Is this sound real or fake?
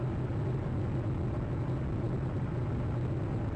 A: real